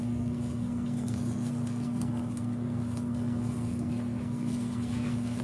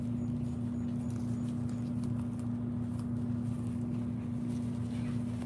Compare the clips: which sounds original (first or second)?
second